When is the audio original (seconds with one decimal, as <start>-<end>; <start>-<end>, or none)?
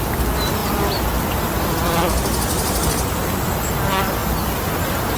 0.0-5.2